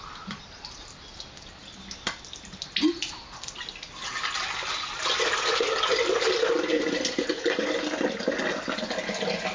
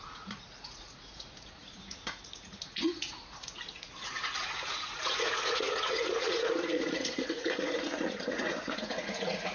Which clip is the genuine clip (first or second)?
first